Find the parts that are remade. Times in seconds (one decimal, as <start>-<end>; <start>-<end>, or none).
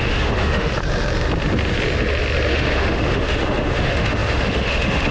0.0-0.8; 2.5-5.1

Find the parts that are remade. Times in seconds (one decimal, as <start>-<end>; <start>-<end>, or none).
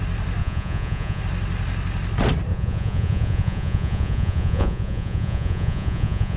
0.4-1.2; 2.5-6.4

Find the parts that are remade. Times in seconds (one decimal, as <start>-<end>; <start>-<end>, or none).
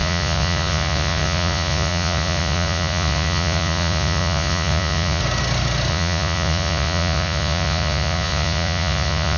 0.0-5.2; 5.9-9.4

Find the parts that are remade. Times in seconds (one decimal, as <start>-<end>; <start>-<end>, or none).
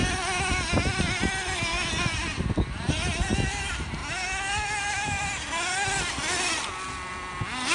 none